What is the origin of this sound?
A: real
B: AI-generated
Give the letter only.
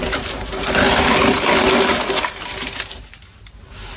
B